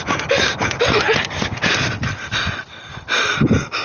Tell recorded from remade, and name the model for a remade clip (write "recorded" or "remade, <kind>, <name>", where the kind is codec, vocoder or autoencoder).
recorded